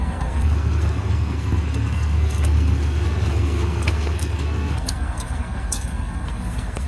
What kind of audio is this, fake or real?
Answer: fake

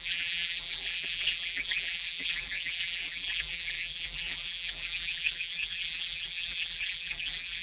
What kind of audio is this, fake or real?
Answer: fake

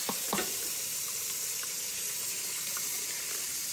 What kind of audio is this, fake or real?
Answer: fake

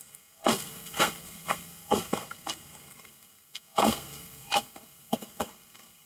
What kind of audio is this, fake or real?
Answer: fake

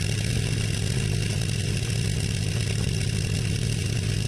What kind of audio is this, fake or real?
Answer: real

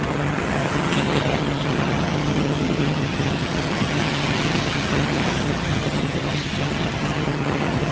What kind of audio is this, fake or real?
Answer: fake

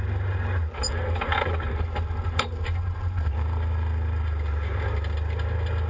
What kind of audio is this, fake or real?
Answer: real